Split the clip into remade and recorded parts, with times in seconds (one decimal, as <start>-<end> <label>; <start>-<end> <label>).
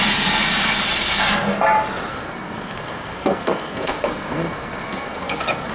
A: 0.0-2.1 recorded; 2.1-5.7 remade